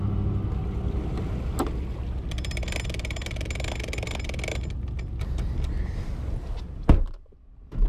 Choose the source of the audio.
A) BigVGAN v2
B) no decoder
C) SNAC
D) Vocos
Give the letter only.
B